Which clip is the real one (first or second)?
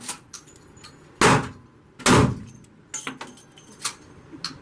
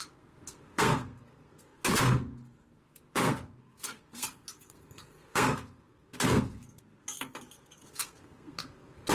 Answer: first